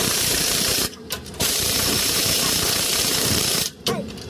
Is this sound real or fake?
fake